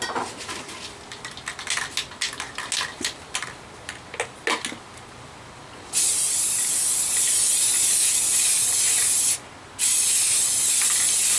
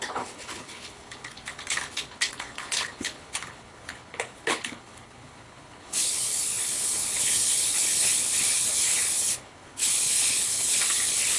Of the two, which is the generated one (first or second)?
second